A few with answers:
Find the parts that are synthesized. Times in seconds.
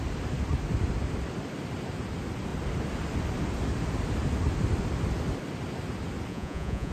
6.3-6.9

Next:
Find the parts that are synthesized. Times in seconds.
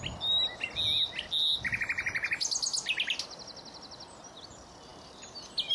none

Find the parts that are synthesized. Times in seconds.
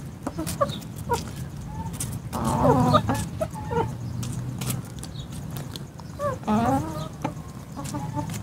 none